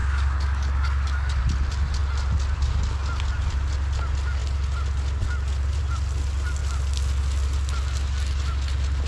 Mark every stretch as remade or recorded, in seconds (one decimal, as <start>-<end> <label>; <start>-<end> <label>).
0.0-1.4 remade; 1.4-9.1 recorded